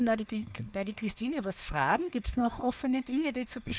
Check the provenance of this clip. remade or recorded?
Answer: remade